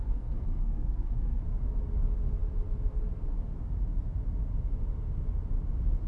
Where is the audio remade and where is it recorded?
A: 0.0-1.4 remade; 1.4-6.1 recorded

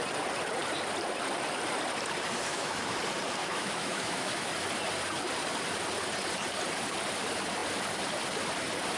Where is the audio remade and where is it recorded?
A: 0.0-2.5 recorded; 2.5-3.0 remade; 3.0-3.4 recorded; 3.4-4.5 remade; 4.5-9.0 recorded

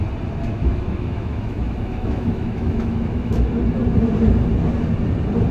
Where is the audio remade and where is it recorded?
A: 0.0-0.5 recorded; 0.5-3.5 remade; 3.5-5.5 recorded

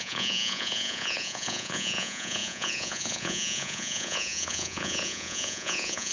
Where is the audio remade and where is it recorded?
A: 0.0-6.1 remade

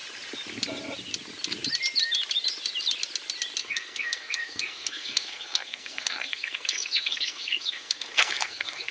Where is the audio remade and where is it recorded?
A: 0.0-3.6 recorded; 3.6-8.9 remade

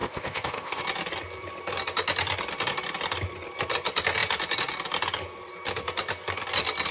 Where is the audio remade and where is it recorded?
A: 0.0-0.8 remade; 0.8-6.9 recorded